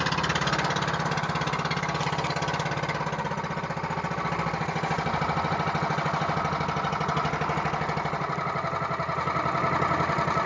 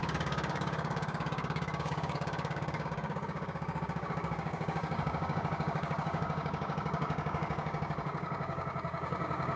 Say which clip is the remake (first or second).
second